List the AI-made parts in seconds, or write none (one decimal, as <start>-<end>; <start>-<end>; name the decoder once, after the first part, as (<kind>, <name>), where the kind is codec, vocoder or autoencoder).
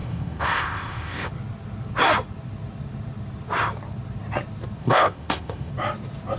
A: 0.0-1.3 (codec, ZipCodec); 4.8-5.7